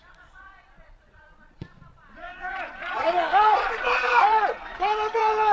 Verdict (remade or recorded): remade